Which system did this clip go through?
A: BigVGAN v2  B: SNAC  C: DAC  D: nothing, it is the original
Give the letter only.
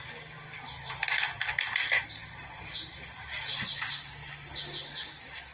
D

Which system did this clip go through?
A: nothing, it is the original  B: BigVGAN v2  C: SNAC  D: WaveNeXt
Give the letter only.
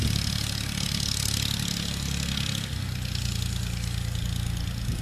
A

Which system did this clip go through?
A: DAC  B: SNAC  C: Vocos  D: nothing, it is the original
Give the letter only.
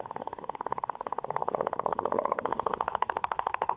B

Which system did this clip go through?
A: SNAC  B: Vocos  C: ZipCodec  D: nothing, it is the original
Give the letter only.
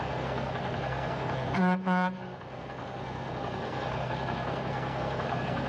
A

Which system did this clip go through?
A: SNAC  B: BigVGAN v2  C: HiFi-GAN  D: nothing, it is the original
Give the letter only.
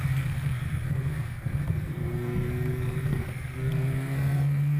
A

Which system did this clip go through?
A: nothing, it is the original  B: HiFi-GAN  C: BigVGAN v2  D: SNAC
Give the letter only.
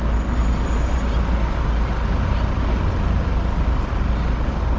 A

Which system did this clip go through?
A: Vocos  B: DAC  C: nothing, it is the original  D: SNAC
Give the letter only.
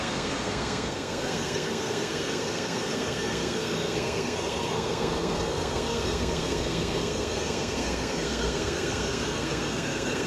D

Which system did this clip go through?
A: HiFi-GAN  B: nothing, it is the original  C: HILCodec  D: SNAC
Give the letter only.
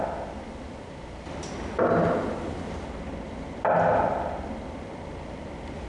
B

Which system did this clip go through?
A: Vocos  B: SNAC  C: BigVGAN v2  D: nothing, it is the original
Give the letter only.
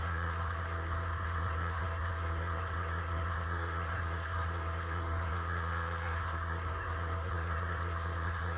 B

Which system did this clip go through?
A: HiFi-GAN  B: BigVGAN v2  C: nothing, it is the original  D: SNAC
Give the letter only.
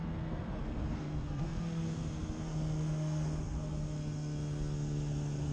D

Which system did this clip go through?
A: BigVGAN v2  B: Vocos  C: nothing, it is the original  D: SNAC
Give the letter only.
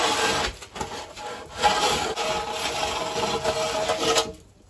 C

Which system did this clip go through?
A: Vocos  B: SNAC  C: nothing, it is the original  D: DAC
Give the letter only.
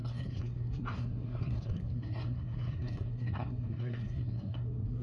B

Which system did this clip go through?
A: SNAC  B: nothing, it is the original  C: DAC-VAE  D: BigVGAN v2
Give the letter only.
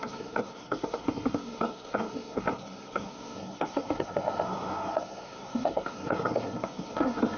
A